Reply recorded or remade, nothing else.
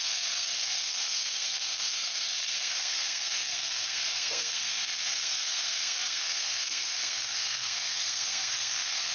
remade